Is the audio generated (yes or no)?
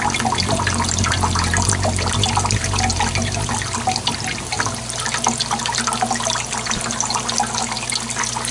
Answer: no